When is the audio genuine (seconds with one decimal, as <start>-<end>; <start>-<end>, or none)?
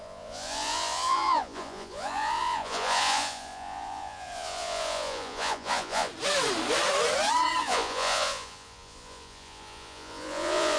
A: 6.1-7.6